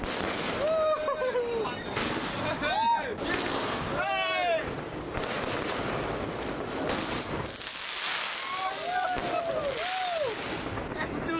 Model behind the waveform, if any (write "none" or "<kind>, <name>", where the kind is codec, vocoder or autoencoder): none